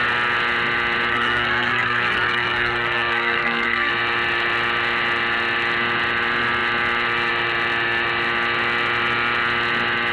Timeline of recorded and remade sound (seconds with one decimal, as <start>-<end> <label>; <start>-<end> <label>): 0.0-1.1 recorded; 1.1-3.9 remade; 3.9-10.1 recorded